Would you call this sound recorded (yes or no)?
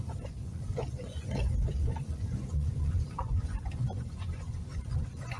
no